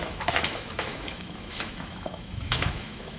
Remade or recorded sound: remade